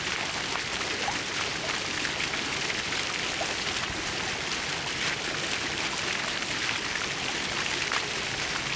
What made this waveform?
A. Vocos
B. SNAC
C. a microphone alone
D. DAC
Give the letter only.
C